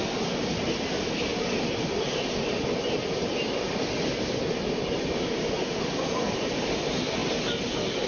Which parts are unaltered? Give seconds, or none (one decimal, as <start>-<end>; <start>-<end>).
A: 0.0-8.1